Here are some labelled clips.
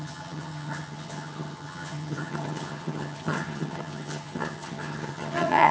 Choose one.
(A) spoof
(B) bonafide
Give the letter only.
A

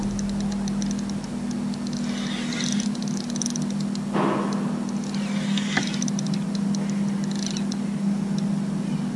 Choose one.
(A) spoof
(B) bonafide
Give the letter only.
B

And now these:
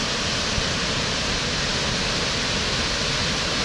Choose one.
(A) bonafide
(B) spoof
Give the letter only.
A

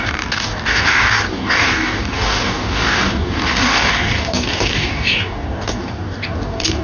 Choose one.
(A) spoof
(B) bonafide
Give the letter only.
A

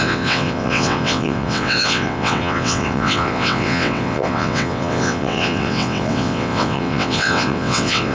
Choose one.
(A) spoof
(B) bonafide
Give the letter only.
A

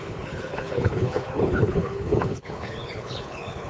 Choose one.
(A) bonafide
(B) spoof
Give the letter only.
B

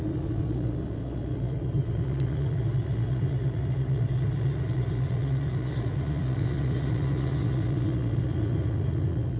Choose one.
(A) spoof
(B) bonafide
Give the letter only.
A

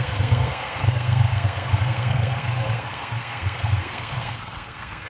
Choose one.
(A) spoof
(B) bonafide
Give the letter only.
A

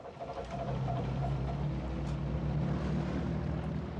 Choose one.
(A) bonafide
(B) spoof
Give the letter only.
A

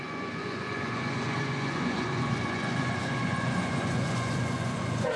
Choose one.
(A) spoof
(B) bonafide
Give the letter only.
A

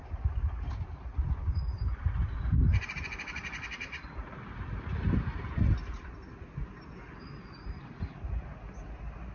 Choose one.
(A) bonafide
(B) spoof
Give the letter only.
A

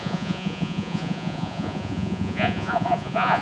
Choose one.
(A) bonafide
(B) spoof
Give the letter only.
B